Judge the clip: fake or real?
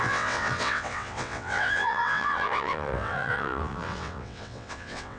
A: fake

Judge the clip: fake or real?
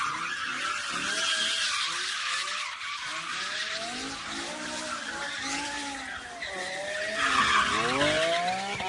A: real